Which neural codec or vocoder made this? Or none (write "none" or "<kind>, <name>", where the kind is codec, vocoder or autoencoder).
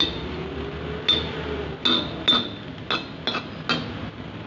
none